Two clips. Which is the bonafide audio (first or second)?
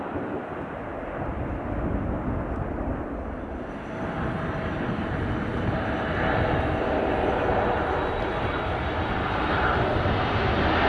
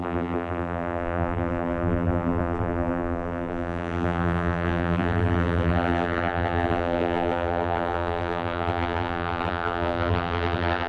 first